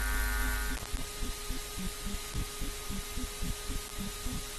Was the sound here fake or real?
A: real